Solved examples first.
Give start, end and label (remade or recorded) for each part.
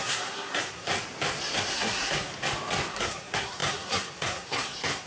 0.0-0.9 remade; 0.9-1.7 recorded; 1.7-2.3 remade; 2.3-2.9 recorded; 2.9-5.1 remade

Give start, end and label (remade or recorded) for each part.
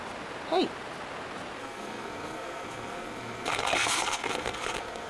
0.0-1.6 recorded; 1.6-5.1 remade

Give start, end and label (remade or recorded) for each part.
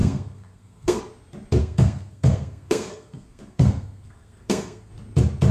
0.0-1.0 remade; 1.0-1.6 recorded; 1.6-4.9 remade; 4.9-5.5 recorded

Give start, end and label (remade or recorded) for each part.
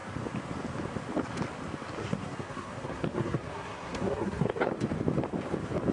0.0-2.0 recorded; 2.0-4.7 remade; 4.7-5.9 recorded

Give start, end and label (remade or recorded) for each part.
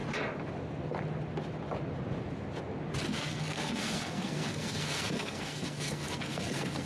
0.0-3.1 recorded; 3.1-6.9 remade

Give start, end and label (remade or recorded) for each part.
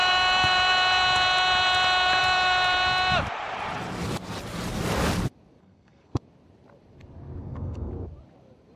0.0-5.6 recorded; 5.6-6.2 remade; 6.2-7.4 recorded; 7.4-7.9 remade; 7.9-8.8 recorded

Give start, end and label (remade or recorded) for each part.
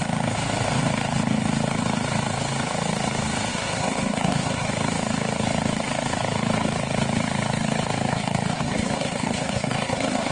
0.0-3.5 recorded; 3.5-4.7 remade; 4.7-8.1 recorded; 8.1-10.3 remade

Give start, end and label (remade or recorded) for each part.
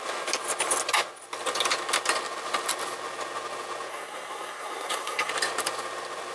0.0-3.9 recorded; 3.9-5.3 remade; 5.3-6.3 recorded